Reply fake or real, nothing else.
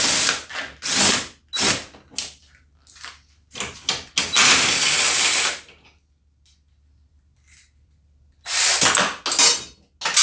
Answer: real